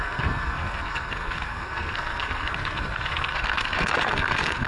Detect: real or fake fake